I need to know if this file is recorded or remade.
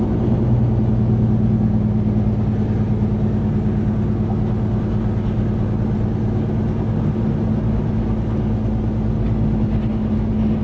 recorded